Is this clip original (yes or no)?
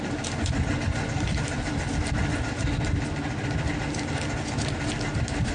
yes